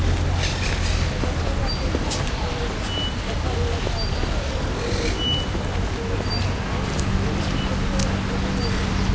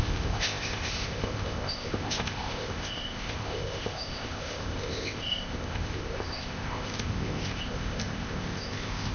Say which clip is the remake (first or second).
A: second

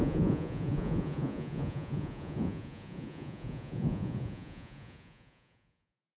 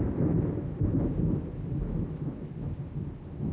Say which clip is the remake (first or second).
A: first